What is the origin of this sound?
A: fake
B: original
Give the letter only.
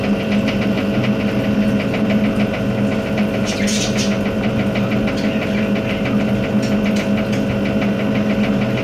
B